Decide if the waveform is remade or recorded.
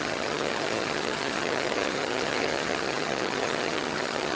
remade